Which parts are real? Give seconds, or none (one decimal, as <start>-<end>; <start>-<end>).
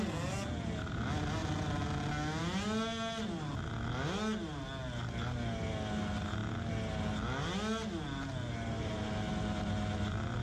0.0-10.4